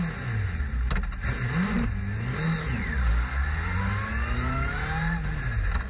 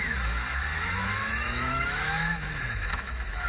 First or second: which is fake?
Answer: second